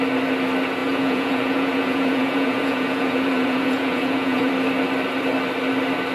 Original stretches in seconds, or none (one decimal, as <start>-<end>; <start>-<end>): 0.0-0.8; 4.5-6.1